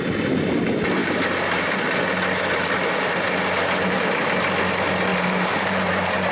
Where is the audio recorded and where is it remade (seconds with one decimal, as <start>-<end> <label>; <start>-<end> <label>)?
0.0-5.1 recorded; 5.1-6.3 remade